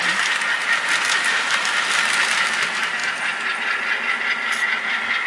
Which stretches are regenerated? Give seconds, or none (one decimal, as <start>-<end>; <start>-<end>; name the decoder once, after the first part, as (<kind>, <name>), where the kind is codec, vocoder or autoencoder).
none